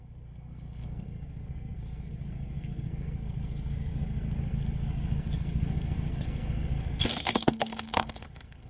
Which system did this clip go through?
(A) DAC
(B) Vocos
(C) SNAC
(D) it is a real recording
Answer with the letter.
C